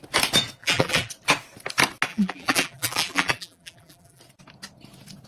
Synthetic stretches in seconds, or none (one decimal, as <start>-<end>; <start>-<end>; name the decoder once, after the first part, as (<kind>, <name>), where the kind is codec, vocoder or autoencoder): 0.6-1.1 (vocoder, BigVGAN v2); 2.1-4.2